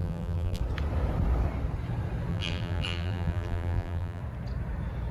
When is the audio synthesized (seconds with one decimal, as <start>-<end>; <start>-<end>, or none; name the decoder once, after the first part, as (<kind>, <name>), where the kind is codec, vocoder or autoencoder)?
0.0-0.6 (vocoder, BigVGAN v2); 2.3-4.2